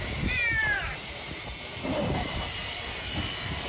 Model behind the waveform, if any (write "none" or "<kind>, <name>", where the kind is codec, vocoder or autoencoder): vocoder, BigVGAN v2